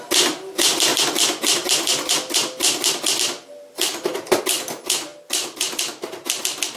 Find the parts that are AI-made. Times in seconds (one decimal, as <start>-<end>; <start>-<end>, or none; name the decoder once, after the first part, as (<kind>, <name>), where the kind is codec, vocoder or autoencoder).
0.9-4.4 (vocoder, BigVGAN v2); 5.1-6.0